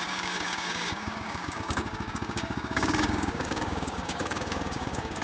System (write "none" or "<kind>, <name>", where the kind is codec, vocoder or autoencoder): codec, DAC